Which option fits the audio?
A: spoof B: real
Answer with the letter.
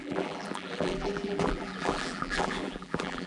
A